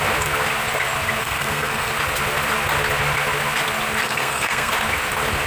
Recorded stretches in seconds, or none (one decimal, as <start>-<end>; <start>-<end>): 0.0-1.2; 1.9-4.0; 4.7-5.5